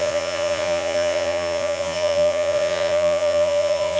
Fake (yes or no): yes